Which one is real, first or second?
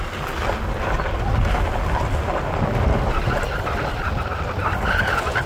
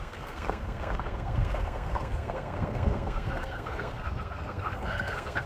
first